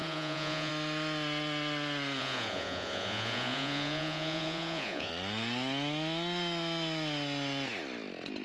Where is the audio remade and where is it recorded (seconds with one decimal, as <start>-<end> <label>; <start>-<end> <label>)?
0.0-0.7 remade; 0.7-2.2 recorded; 2.2-5.1 remade; 5.1-8.4 recorded